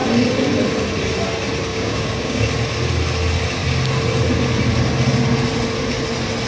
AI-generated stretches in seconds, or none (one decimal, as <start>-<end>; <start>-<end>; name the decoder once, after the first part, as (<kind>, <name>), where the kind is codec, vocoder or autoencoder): 1.7-2.5 (codec, DAC)